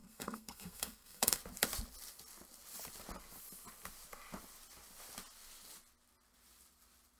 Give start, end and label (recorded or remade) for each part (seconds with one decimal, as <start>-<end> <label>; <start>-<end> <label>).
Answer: 0.0-1.4 remade; 1.4-7.2 recorded